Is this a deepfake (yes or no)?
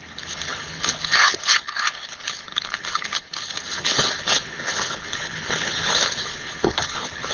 yes